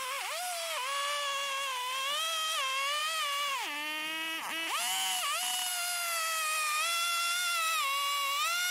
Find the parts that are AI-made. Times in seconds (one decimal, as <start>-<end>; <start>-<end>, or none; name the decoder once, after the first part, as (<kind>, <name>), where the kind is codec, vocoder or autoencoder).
none